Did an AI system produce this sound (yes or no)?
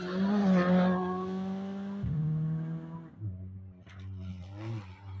no